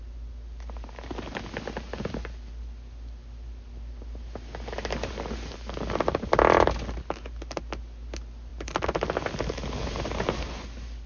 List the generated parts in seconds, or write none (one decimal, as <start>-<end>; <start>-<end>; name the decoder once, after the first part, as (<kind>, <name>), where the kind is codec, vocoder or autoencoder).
none